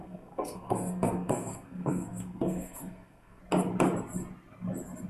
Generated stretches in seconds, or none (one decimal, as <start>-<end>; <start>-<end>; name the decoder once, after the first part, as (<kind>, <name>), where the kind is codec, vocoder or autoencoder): 0.0-3.4 (codec, SNAC)